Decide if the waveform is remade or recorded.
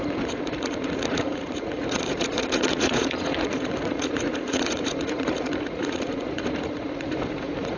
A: remade